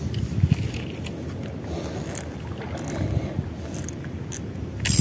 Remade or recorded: recorded